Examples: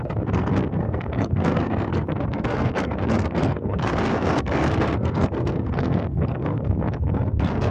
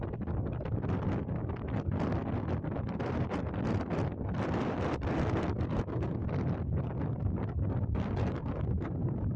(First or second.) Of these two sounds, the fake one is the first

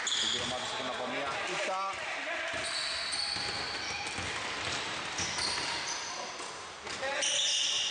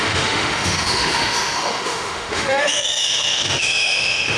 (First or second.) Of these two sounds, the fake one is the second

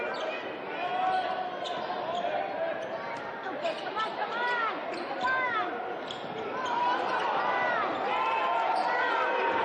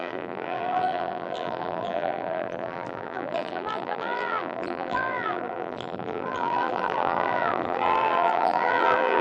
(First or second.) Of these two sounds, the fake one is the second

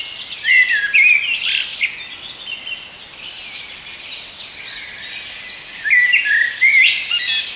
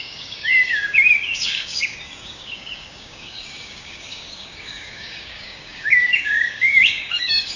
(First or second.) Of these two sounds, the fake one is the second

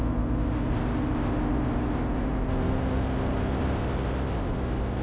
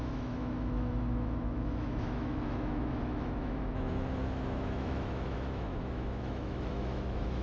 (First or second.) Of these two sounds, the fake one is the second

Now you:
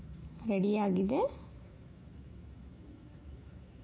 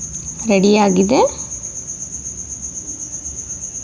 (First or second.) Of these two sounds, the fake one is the first